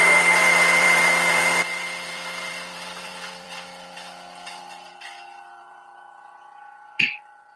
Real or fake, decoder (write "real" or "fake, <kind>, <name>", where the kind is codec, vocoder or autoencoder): fake, vocoder, BigVGAN v2